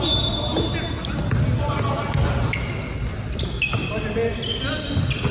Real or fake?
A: real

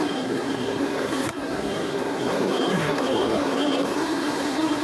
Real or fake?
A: fake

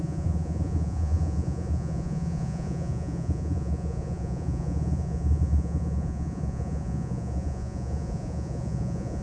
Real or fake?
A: fake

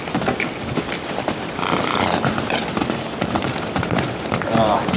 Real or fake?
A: real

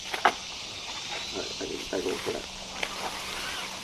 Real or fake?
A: real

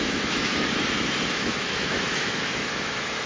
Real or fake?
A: fake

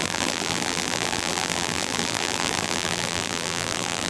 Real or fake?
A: fake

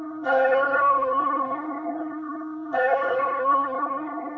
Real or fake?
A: fake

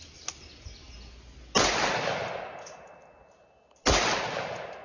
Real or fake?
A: real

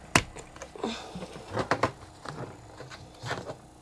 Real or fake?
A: real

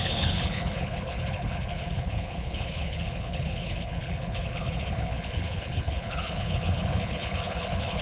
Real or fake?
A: fake